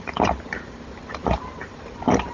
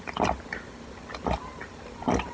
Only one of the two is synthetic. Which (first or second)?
first